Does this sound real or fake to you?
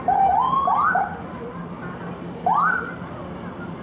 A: real